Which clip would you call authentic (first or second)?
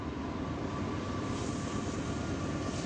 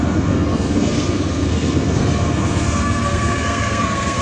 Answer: first